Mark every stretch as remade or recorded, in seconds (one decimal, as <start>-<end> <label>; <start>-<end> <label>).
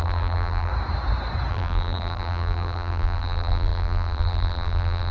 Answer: 0.0-0.7 remade; 0.7-1.5 recorded; 1.5-5.1 remade